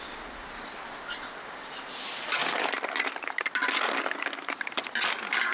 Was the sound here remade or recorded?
recorded